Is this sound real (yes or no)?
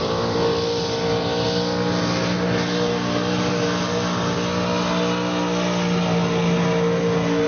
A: yes